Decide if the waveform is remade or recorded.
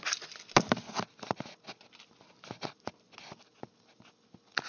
recorded